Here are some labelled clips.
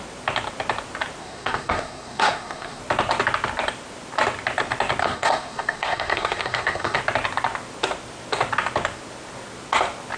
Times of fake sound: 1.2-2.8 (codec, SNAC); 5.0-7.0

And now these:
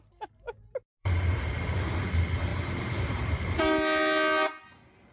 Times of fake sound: 1.0-2.1 (vocoder, BigVGAN v2); 2.5-3.3

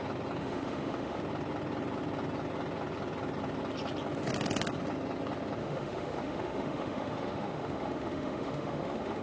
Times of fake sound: 0.4-1.2 (autoencoder, DAC-VAE); 5.6-9.2

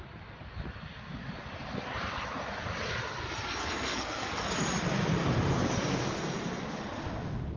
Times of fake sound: 3.6-4.4 (codec, SNAC)

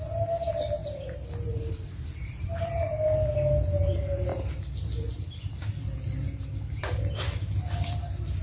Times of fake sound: none

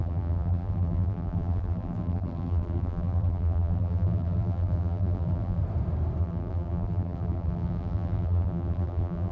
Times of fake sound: 0.0-5.6 (vocoder, BigVGAN v2); 6.2-9.3

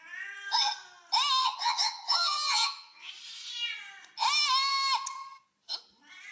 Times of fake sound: 1.4-3.1 (vocoder, HiFi-GAN)